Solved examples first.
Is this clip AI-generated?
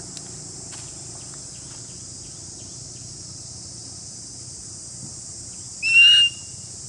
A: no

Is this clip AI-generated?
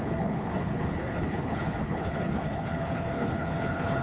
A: yes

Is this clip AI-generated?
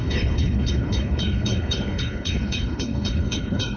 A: yes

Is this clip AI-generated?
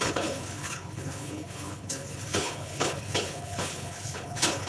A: yes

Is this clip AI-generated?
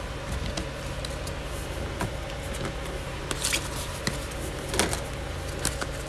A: no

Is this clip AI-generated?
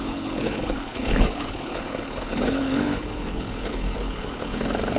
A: yes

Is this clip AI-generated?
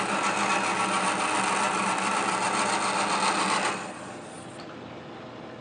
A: no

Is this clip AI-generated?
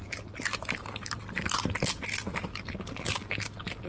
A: no